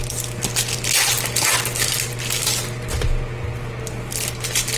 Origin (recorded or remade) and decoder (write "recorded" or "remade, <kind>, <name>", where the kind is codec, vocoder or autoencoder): recorded